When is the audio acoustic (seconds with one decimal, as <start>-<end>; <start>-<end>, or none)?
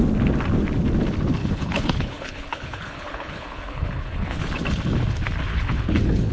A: 0.0-1.4; 4.4-5.5